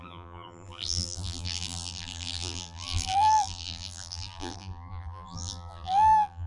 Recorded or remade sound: remade